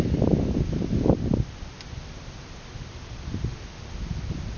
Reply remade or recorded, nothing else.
recorded